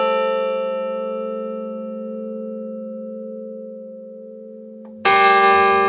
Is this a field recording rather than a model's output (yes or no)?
yes